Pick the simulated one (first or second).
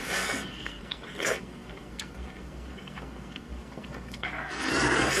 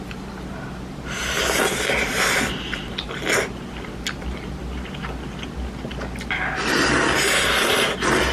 first